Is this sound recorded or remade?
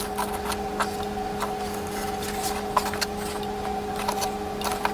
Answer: recorded